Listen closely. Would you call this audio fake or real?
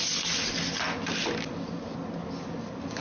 real